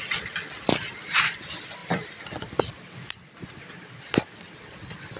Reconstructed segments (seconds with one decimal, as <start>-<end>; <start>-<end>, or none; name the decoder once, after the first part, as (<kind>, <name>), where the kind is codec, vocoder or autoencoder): none